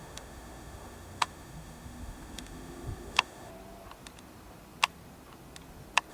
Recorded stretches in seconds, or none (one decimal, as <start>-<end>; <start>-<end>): 3.5-6.1